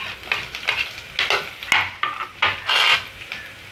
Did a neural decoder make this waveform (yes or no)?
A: no